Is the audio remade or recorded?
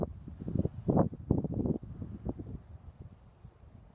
recorded